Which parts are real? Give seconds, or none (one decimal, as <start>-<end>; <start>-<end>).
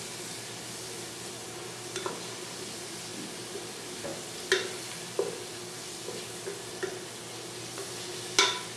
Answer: 0.0-8.8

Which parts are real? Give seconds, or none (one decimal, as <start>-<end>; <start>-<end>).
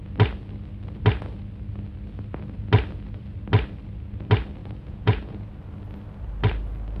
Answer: 0.0-4.6; 5.5-7.0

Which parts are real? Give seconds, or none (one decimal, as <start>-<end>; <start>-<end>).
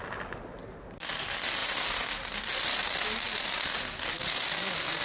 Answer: 0.0-5.0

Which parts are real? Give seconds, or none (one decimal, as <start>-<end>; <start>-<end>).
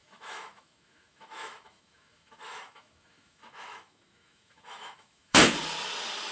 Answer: 5.4-6.3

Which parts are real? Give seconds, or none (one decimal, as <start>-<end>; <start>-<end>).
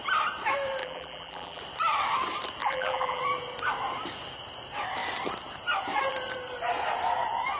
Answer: 0.0-0.8; 1.6-2.6; 3.2-7.6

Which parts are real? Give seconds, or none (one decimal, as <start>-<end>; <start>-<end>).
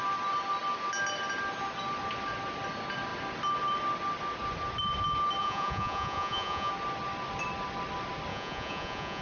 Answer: 0.0-5.4; 6.7-8.3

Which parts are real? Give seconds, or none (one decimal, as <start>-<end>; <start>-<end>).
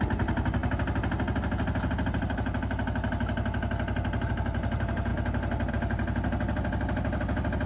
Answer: 0.0-7.7